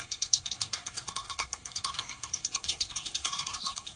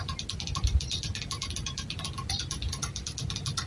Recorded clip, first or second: second